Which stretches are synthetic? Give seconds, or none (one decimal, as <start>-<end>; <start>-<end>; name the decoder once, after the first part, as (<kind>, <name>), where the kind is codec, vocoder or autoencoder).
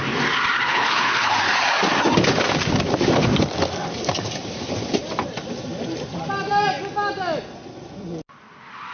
0.7-1.3 (codec, HILCodec)